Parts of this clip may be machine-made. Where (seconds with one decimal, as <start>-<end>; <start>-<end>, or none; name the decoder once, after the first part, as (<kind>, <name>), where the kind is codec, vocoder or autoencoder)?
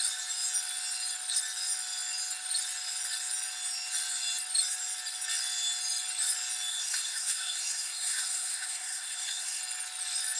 6.7-9.6 (codec, SNAC)